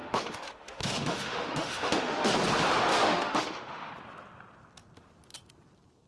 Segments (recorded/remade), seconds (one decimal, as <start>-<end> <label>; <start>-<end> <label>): 0.0-2.3 remade; 2.3-2.9 recorded; 2.9-3.9 remade; 3.9-6.1 recorded